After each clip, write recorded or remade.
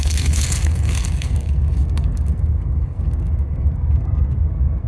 remade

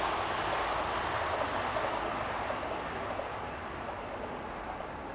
recorded